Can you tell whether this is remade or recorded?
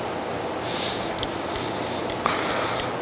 recorded